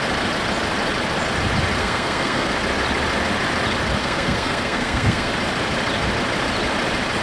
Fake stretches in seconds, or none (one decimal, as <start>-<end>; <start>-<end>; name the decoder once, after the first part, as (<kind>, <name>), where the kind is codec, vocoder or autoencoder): 1.8-2.5 (codec, SNAC); 4.0-5.3